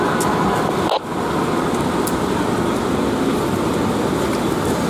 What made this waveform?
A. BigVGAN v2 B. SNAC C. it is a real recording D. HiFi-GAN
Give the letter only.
C